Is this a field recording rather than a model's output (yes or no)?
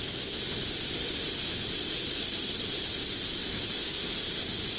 yes